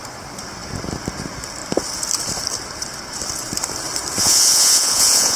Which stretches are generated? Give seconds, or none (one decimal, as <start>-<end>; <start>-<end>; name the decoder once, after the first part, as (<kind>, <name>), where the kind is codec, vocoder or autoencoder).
4.2-5.4 (vocoder, Vocos)